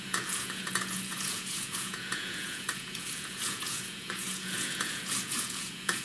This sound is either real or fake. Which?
fake